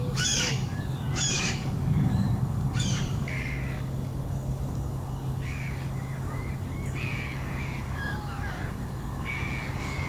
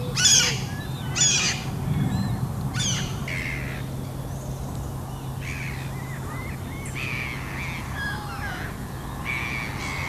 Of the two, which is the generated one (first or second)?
first